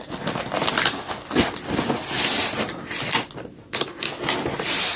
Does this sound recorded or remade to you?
recorded